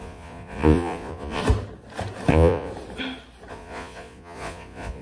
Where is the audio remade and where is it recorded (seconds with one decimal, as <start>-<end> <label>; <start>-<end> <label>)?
0.0-1.4 remade; 1.4-2.3 recorded; 2.3-2.7 remade; 2.7-3.5 recorded; 3.5-5.0 remade